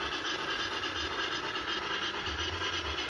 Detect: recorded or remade recorded